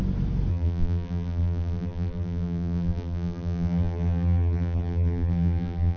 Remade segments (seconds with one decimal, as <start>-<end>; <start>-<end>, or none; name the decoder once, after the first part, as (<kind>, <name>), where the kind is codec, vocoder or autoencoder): 0.5-6.0 (vocoder, BigVGAN v2)